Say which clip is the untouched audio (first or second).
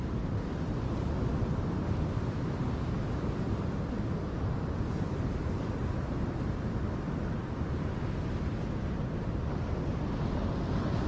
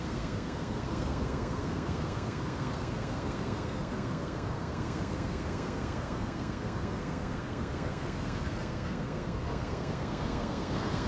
first